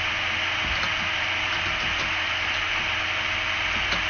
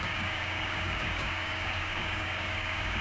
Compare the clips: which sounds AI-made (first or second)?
second